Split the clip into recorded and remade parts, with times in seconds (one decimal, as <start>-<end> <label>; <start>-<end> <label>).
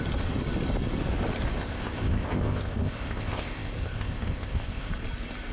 0.0-1.6 recorded; 1.6-4.9 remade; 4.9-5.5 recorded